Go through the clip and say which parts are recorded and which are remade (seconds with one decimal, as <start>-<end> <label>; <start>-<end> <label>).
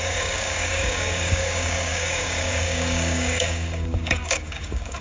0.0-5.0 remade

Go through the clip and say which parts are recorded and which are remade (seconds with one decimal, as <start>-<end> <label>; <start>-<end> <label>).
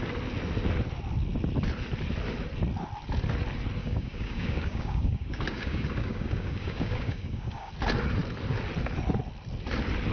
0.0-3.8 recorded; 3.8-7.7 remade; 7.7-10.1 recorded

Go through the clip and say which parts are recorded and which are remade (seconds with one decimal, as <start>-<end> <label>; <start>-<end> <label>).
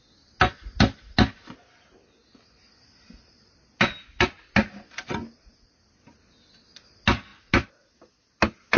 0.0-8.8 recorded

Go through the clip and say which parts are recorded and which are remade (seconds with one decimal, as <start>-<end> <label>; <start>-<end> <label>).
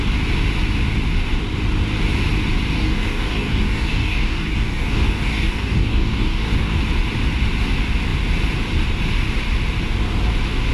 0.0-2.7 recorded; 2.7-6.8 remade; 6.8-10.7 recorded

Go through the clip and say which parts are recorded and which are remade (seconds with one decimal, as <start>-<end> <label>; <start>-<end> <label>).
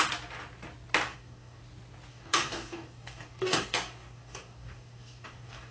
0.0-1.1 recorded; 1.1-1.6 remade; 1.6-2.1 recorded; 2.1-5.7 remade